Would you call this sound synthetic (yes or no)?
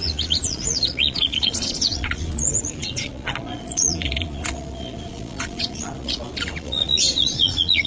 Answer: yes